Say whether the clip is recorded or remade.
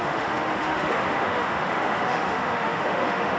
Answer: remade